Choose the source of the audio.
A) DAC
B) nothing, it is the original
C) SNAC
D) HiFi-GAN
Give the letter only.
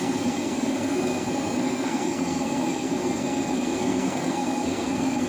C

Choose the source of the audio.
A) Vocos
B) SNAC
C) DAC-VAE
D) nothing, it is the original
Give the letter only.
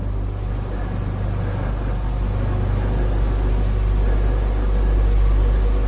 D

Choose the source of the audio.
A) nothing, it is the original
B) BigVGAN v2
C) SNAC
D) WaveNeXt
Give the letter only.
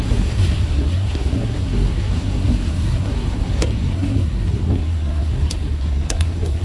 C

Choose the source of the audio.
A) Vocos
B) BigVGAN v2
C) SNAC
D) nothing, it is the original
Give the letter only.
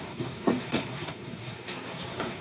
C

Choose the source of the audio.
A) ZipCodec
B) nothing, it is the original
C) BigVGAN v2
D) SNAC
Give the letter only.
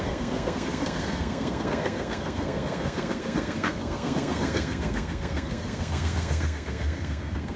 D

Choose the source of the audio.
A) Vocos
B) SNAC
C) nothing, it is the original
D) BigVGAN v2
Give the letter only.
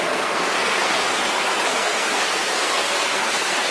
B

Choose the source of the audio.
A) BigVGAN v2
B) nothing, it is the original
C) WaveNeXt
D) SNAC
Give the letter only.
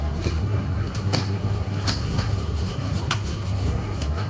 D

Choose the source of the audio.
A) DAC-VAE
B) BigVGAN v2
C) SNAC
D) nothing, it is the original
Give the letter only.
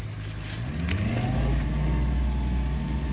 D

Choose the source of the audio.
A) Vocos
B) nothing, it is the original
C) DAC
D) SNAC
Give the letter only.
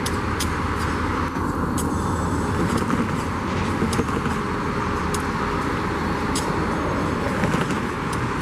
B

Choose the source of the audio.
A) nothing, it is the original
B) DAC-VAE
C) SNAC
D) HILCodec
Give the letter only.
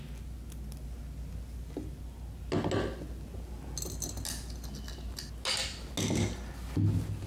A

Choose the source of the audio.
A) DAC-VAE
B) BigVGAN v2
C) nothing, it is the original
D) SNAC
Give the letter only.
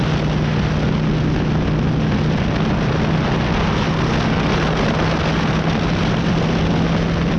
C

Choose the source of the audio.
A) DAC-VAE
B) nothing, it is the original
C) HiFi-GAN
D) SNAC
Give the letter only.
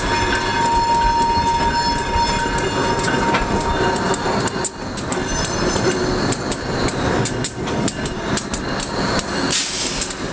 B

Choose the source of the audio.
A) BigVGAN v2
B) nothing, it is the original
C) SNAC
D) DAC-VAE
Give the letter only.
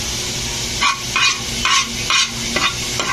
B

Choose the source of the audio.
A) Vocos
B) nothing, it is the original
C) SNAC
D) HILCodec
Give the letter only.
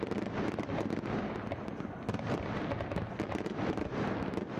B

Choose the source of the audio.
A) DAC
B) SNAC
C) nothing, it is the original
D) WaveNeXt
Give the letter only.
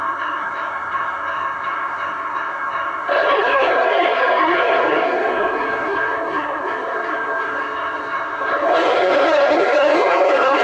B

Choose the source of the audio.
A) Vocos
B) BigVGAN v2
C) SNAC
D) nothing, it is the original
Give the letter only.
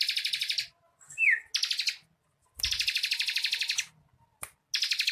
D